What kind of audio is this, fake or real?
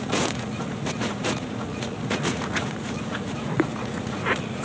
fake